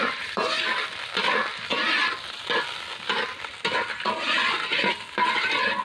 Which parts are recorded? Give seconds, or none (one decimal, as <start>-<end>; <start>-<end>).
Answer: 0.0-5.8